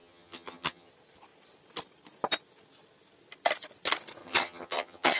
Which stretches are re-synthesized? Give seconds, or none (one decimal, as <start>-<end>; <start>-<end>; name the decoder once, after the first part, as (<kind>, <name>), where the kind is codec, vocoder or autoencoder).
0.0-0.9 (vocoder, HiFi-GAN); 4.2-5.2